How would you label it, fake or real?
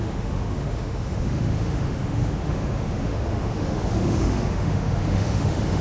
fake